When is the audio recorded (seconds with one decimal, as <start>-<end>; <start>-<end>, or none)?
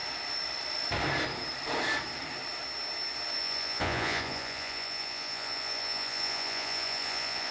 0.0-3.4